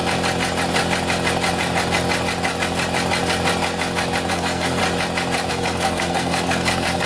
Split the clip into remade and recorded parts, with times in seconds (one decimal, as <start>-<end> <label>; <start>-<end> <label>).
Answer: 0.0-4.3 recorded; 4.3-4.8 remade; 4.8-5.5 recorded; 5.5-7.1 remade